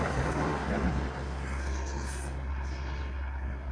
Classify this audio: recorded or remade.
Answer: remade